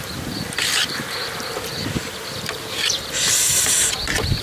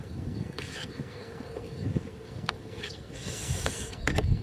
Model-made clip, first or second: second